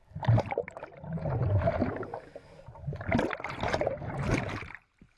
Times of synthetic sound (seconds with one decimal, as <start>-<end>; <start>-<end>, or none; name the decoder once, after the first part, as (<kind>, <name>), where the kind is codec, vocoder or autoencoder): 0.0-1.4 (vocoder, BigVGAN v2); 2.6-5.2